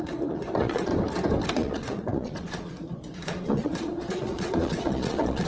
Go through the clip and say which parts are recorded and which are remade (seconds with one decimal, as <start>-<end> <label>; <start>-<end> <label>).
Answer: 0.0-0.9 remade; 0.9-1.5 recorded; 1.5-5.5 remade